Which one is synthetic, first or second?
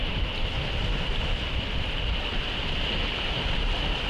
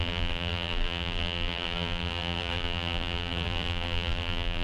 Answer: second